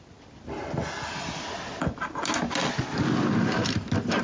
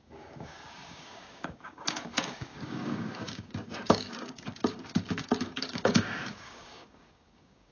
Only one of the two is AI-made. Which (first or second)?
second